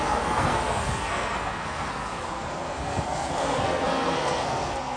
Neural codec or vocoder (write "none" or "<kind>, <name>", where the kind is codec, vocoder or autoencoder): codec, SNAC